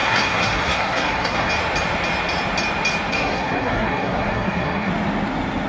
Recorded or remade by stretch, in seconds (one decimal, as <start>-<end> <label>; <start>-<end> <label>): 0.0-1.5 remade; 1.5-3.1 recorded; 3.1-4.9 remade; 4.9-5.7 recorded